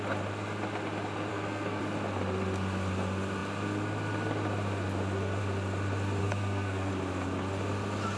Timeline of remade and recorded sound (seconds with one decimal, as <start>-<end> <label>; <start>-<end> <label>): 0.0-1.3 recorded; 1.3-1.8 remade; 1.8-6.2 recorded; 6.2-6.9 remade; 6.9-8.2 recorded